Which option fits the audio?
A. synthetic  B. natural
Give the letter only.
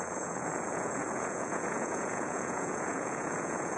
A